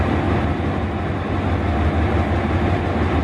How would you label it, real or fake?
real